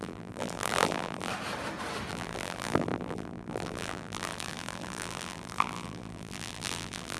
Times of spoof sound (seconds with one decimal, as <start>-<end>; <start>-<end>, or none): 0.0-1.3; 2.1-7.2